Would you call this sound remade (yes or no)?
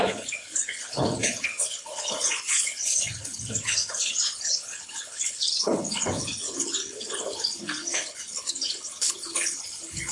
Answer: yes